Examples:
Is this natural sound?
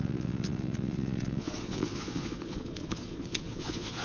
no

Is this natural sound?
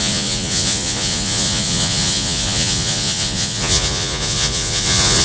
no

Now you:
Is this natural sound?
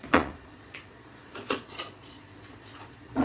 no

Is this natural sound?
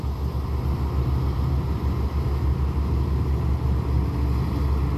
yes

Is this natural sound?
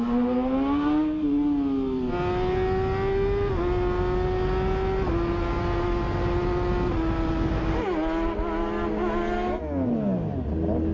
yes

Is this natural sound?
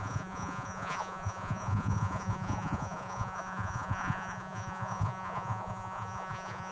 no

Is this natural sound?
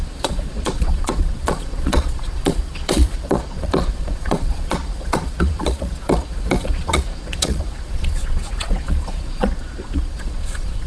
no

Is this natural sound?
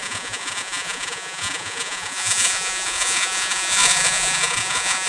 no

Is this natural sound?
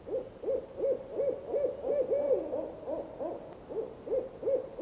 yes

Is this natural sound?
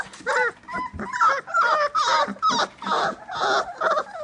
yes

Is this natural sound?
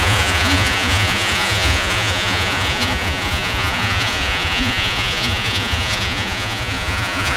no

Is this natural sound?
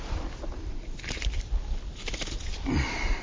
yes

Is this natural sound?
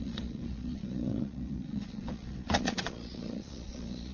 no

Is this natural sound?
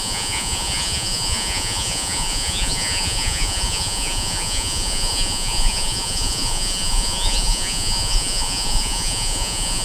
no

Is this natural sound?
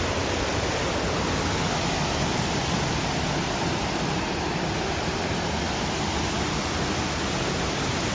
yes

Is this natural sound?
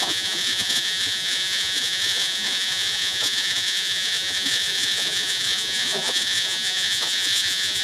no